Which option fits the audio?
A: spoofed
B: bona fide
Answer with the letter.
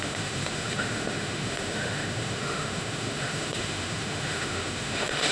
A